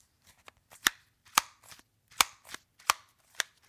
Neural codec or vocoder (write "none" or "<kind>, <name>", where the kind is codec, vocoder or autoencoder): none